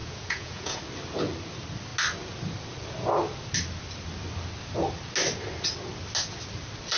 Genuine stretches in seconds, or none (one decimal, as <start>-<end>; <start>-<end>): 0.8-7.0